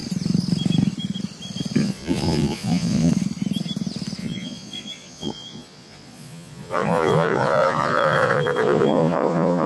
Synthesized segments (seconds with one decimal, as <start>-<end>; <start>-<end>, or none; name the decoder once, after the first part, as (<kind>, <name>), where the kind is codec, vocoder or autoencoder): 1.8-3.1 (vocoder, Vocos); 4.2-9.7